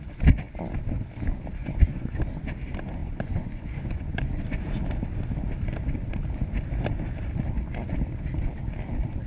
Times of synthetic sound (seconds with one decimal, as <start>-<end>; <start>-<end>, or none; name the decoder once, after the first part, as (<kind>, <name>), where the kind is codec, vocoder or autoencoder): 1.6-2.2 (vocoder, Vocos); 3.0-4.8

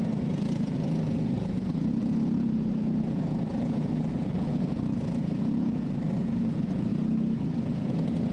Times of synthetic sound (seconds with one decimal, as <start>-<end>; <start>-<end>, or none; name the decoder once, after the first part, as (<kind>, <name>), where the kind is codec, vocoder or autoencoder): 0.0-6.9 (vocoder, Vocos); 7.6-8.3

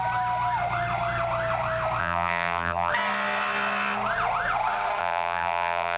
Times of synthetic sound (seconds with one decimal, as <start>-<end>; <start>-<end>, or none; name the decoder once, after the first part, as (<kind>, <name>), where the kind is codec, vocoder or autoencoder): 2.0-2.9 (vocoder, BigVGAN v2); 5.0-6.0